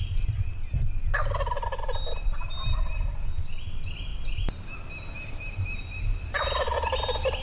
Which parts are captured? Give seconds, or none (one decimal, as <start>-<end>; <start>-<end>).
0.0-7.4